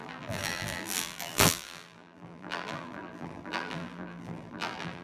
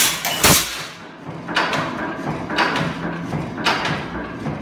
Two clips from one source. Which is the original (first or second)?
second